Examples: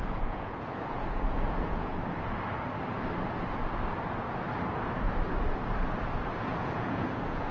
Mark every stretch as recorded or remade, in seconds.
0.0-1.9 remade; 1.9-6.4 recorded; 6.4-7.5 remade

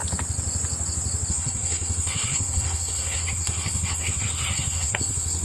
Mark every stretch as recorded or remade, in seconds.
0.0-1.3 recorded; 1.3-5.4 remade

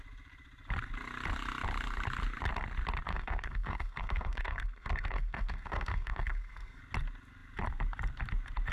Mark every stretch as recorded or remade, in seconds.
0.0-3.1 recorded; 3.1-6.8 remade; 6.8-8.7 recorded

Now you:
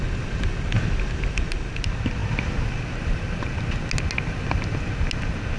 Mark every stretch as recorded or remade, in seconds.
0.0-5.6 recorded

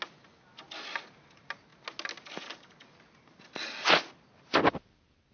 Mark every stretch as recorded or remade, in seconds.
0.0-5.3 recorded

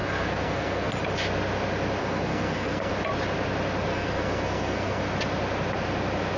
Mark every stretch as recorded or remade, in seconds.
0.0-0.9 remade; 0.9-2.0 recorded; 2.0-2.9 remade; 2.9-3.9 recorded; 3.9-5.0 remade; 5.0-6.4 recorded

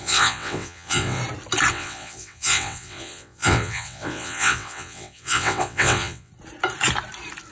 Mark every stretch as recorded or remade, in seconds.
0.0-1.2 remade; 1.2-1.7 recorded; 1.7-6.3 remade; 6.3-7.5 recorded